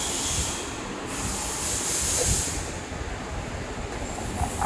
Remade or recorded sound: recorded